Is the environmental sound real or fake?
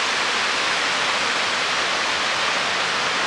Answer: real